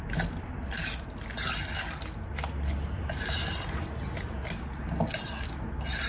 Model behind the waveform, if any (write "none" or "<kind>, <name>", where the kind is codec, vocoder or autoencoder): none